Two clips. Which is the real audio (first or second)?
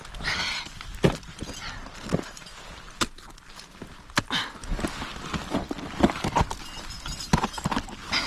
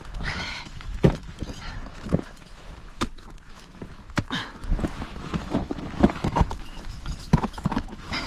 first